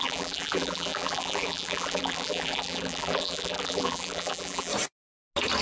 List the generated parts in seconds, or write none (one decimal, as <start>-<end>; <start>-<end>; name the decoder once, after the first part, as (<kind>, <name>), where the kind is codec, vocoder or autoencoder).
0.0-4.7 (vocoder, BigVGAN v2)